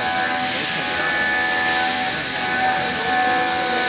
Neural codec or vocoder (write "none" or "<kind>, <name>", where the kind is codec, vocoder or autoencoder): none